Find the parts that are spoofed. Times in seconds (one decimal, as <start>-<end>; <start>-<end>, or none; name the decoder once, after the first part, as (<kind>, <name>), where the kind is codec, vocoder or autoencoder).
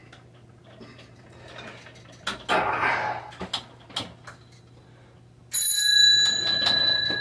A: none